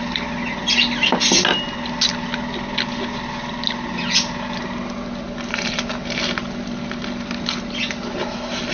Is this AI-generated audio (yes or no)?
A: no